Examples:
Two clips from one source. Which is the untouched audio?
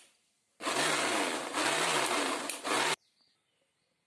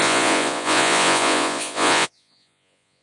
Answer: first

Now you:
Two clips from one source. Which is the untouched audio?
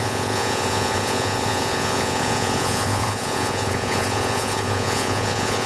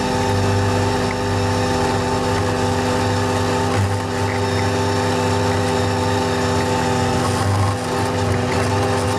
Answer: second